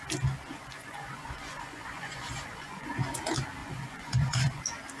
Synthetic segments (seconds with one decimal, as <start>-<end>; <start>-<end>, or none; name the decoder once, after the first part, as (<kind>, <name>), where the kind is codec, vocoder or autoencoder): 0.5-2.9 (vocoder, Vocos); 3.6-4.6